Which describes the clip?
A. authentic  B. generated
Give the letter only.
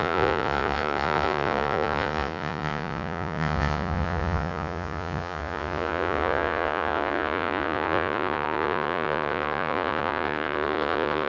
B